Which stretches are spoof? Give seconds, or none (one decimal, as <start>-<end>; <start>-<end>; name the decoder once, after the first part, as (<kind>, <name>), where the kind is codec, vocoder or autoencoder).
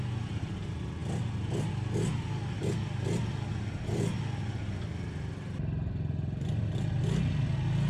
none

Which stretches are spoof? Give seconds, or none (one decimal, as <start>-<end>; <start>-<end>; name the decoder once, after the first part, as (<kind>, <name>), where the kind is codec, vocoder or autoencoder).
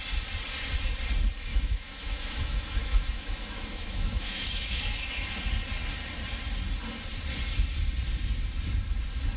1.5-5.4 (autoencoder, DAC-VAE)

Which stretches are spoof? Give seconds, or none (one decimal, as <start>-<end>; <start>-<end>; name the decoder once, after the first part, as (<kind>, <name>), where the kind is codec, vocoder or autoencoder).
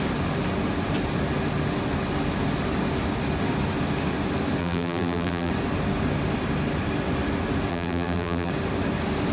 4.6-5.5 (vocoder, BigVGAN v2); 7.7-8.5